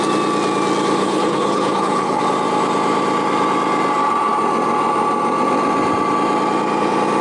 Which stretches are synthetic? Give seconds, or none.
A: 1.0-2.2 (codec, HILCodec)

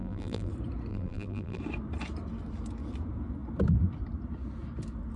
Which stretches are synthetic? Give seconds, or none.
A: 0.0-0.5 (vocoder, BigVGAN v2); 0.9-1.6

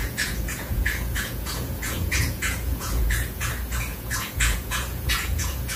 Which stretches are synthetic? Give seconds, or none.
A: 0.0-3.5 (vocoder, Vocos); 3.9-5.8